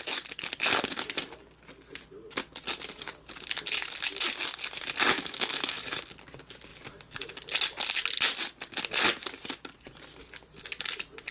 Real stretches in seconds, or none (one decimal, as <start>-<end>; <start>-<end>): 0.0-5.1; 6.1-11.3